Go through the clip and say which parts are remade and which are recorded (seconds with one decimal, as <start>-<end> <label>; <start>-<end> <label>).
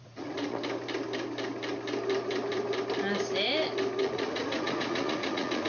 0.0-0.6 remade; 0.6-4.0 recorded; 4.0-5.7 remade